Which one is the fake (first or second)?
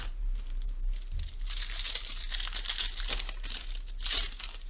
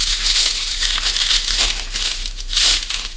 second